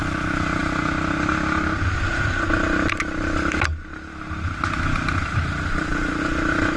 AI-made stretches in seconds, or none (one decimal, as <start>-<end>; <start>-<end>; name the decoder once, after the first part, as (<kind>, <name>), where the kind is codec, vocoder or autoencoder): 5.2-6.2 (vocoder, BigVGAN v2)